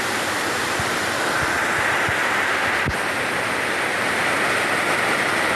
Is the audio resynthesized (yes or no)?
no